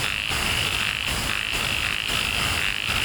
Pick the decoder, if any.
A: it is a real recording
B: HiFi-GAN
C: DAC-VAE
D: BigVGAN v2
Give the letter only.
A